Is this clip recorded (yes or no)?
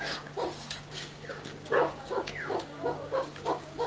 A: no